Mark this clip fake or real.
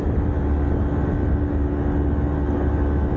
real